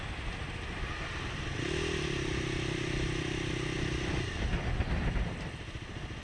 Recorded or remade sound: recorded